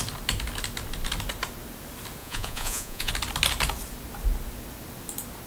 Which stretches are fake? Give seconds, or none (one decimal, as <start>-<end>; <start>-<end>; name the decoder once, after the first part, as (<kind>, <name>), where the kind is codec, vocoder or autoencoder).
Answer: 2.2-3.1 (vocoder, Vocos)